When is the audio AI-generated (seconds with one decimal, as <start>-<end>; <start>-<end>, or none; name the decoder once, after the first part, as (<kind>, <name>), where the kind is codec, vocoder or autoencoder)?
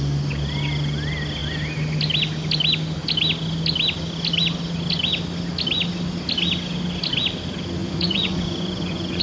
7.8-9.2 (vocoder, Vocos)